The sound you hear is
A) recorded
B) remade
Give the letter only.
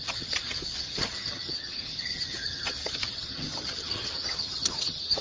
B